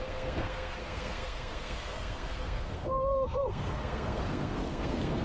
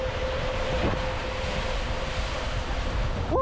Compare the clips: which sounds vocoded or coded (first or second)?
first